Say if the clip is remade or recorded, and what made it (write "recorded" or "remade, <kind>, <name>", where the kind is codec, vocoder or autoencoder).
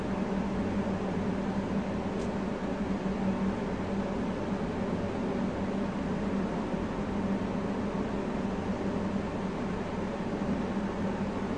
recorded